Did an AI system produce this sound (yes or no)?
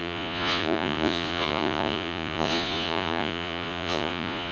yes